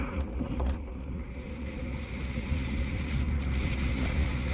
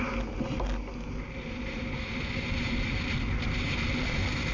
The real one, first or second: second